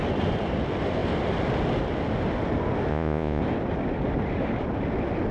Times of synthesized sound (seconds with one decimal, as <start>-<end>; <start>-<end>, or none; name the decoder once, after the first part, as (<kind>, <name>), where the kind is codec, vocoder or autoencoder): 2.9-3.4 (vocoder, Vocos)